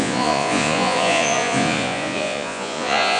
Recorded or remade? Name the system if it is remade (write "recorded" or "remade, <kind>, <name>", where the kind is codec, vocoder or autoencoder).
remade, vocoder, Vocos